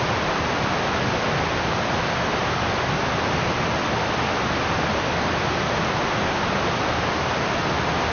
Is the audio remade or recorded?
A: recorded